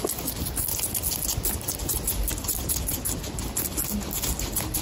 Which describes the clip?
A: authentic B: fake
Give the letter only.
A